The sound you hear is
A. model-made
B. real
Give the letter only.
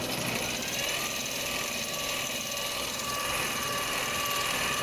B